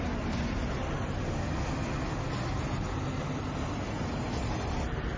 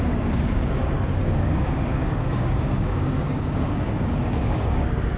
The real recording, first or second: first